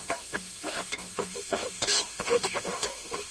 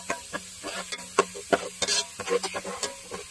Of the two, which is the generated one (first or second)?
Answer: first